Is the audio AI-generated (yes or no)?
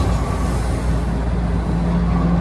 no